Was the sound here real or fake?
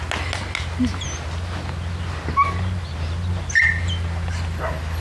real